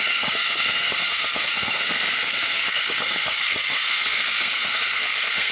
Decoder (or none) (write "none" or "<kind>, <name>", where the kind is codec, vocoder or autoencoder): codec, SNAC